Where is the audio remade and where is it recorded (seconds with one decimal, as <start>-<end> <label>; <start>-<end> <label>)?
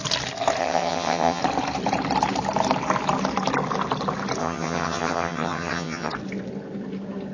0.0-0.6 recorded; 0.6-1.4 remade; 1.4-4.4 recorded; 4.4-6.1 remade; 6.1-7.3 recorded